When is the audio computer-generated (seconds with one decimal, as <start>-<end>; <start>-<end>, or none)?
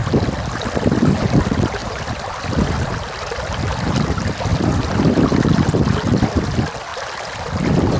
1.8-3.6; 4.5-5.5; 6.9-8.0